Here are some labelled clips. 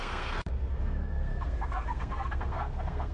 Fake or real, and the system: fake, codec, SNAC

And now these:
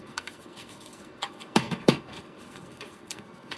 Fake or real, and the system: fake, codec, SNAC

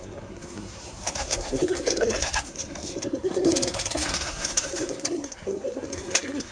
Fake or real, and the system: fake, codec, SNAC